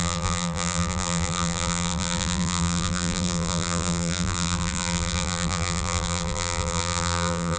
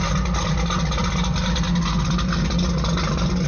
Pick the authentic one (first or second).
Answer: second